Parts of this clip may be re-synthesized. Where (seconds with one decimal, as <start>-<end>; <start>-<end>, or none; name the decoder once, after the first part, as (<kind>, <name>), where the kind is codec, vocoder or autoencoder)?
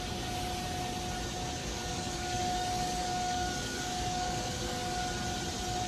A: 1.6-5.1 (codec, DAC)